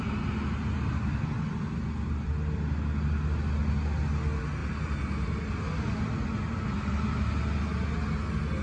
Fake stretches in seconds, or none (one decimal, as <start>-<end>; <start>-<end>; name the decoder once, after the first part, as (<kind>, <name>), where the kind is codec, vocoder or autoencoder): none